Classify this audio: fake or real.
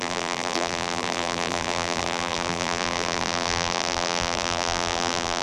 fake